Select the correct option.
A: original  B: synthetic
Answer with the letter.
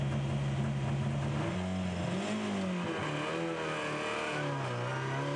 A